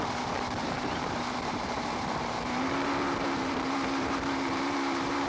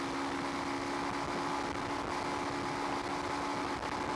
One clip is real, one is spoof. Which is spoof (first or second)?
first